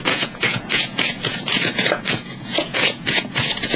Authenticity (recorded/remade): remade